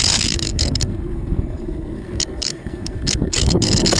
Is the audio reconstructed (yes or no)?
yes